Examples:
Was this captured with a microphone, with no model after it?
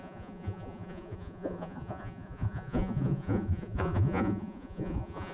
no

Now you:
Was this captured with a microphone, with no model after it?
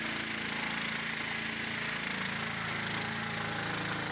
yes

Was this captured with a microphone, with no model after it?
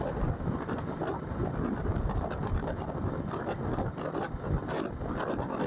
yes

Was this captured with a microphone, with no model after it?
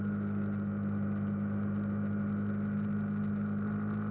yes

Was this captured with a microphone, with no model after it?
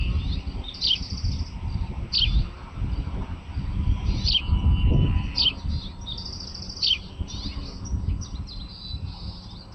yes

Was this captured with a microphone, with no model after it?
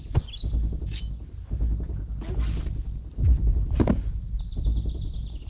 yes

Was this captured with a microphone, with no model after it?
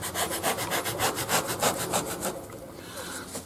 yes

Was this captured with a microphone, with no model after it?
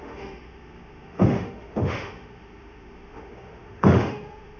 no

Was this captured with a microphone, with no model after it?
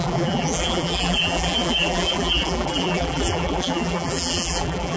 no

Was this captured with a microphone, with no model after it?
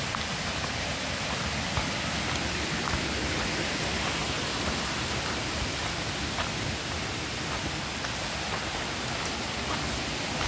yes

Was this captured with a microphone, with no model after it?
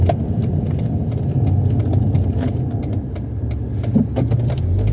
yes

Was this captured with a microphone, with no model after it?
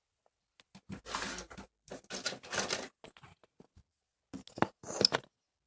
yes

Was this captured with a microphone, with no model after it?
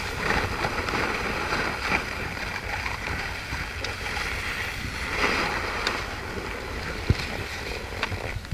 yes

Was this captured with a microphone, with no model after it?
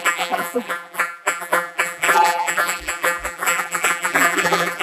no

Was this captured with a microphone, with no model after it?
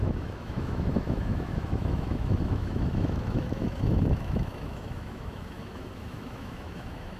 no